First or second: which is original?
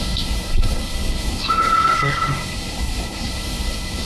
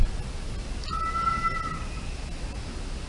second